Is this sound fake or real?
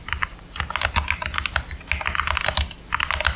real